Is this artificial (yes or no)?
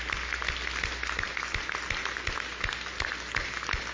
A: no